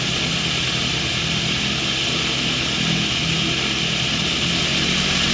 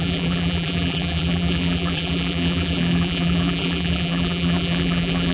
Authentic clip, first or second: first